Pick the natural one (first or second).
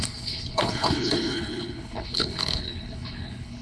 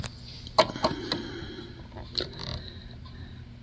second